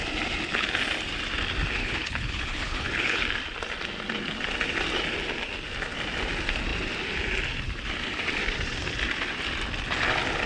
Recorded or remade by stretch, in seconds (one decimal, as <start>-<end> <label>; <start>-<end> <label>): 0.0-1.8 recorded; 1.8-3.2 remade; 3.2-10.5 recorded